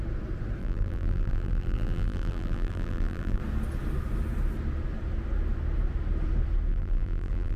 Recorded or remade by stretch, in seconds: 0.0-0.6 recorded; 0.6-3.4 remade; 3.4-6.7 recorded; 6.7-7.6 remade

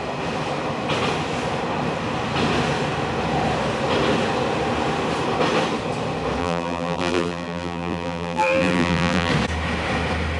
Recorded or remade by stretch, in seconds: 0.0-6.4 recorded; 6.4-9.3 remade; 9.3-10.4 recorded

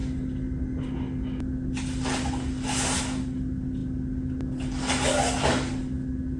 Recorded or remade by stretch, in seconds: 0.0-6.4 recorded

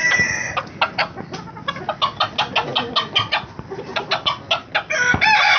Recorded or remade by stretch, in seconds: 0.0-5.6 recorded

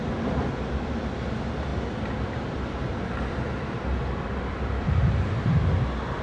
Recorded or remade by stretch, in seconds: 0.0-1.7 recorded; 1.7-5.1 remade; 5.1-6.2 recorded